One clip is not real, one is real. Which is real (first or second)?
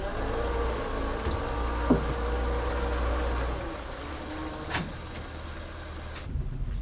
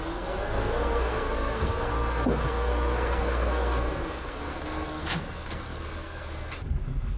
first